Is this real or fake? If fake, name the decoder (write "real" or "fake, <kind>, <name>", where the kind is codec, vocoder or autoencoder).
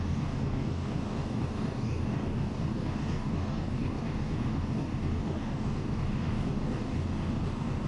fake, codec, DAC